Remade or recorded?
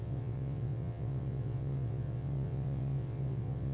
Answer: remade